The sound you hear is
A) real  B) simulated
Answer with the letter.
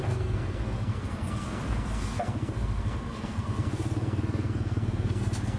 B